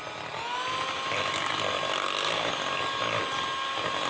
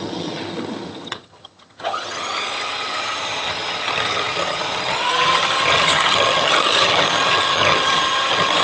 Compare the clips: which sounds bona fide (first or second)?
first